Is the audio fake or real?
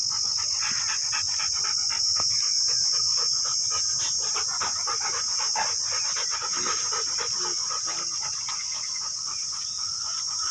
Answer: real